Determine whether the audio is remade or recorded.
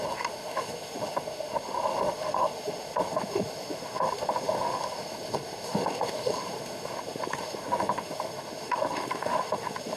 remade